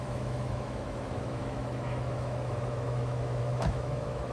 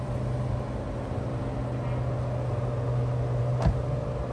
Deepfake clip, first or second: first